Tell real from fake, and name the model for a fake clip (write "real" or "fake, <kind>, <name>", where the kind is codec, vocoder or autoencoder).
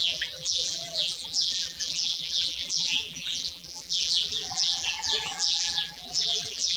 fake, vocoder, BigVGAN v2